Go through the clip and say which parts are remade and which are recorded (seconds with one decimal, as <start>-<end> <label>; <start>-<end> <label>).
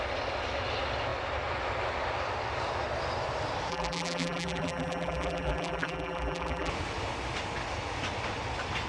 0.0-3.7 recorded; 3.7-6.7 remade; 6.7-8.9 recorded